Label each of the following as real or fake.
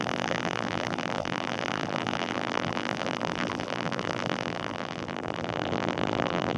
fake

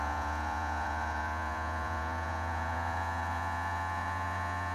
fake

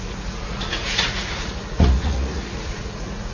fake